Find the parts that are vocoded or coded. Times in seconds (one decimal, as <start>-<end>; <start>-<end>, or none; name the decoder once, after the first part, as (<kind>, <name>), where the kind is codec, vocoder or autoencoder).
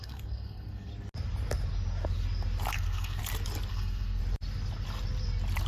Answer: 0.0-0.9 (codec, SNAC); 2.7-3.2; 3.7-4.2